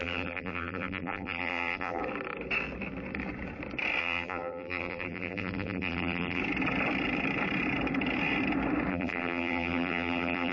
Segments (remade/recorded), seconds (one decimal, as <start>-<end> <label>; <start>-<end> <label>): 0.0-2.0 remade; 2.0-4.0 recorded; 4.0-6.4 remade; 6.4-8.9 recorded; 8.9-10.5 remade